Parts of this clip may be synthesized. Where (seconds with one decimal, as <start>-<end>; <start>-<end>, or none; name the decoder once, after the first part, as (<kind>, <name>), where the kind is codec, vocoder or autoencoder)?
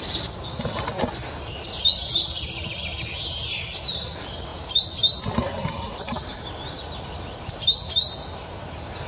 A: 0.0-9.1 (vocoder, BigVGAN v2)